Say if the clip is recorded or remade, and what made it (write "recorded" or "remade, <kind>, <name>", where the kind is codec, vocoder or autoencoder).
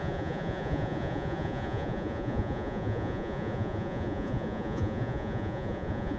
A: remade, vocoder, Vocos